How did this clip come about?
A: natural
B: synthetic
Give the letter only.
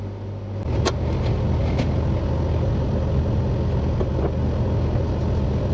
A